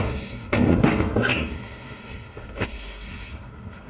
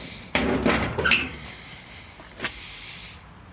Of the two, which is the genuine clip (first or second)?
second